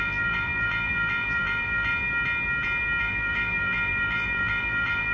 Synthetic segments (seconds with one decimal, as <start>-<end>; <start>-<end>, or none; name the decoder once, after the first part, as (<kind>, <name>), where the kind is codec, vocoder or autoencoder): 0.0-1.9 (vocoder, BigVGAN v2); 3.0-5.1